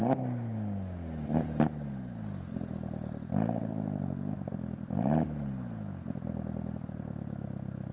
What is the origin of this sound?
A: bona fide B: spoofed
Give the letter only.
A